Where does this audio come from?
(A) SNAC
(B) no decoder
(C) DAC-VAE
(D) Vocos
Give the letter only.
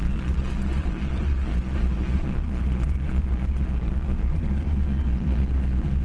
D